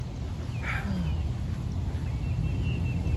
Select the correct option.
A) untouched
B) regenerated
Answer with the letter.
A